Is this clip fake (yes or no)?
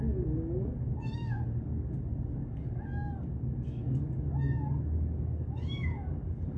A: yes